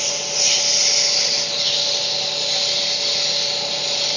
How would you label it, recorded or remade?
recorded